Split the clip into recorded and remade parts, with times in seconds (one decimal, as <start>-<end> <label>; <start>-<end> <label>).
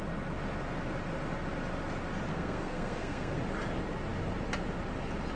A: 0.0-2.3 recorded; 2.3-3.4 remade; 3.4-5.4 recorded